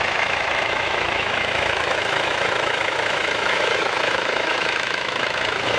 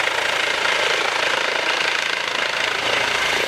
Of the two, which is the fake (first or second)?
first